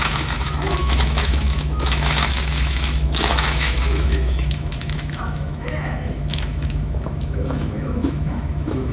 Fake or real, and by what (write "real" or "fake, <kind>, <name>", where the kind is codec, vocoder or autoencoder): fake, autoencoder, DAC-VAE